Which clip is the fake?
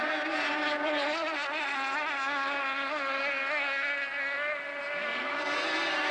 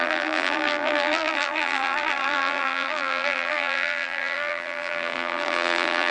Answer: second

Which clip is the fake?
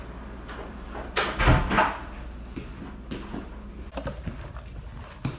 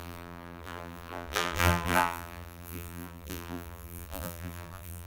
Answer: second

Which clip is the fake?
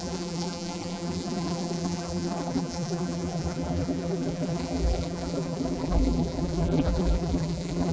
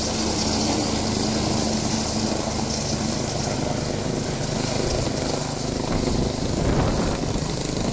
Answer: first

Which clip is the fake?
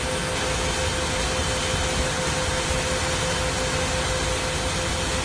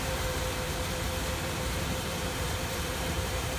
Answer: second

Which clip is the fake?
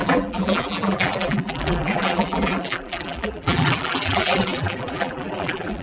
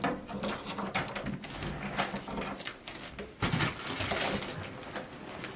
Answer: first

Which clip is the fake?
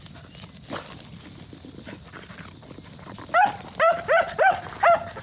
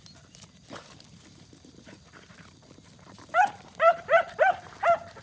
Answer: second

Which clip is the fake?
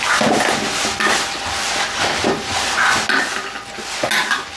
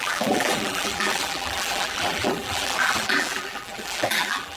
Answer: second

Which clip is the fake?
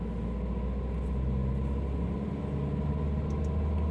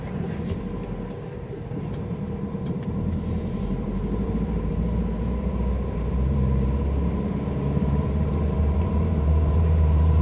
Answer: second